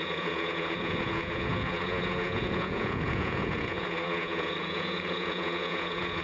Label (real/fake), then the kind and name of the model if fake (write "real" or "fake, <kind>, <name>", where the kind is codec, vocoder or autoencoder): fake, vocoder, Vocos